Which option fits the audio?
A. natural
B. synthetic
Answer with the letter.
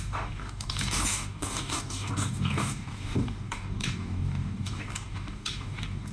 B